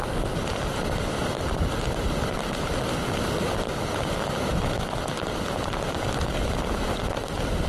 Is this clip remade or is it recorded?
recorded